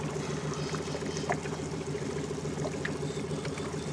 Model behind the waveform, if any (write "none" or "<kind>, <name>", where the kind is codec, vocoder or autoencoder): none